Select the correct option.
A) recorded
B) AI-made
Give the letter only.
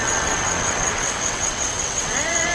B